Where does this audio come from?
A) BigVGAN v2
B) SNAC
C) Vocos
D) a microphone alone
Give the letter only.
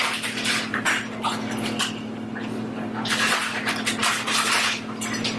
D